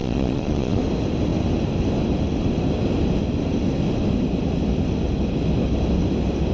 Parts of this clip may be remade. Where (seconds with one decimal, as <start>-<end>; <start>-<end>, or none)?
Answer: 0.0-0.8